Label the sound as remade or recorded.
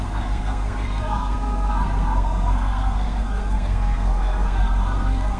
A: remade